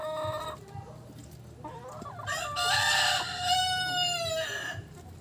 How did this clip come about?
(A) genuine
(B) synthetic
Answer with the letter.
A